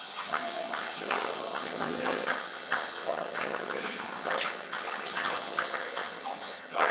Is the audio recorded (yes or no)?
no